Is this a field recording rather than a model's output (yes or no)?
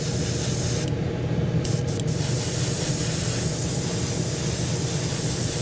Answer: yes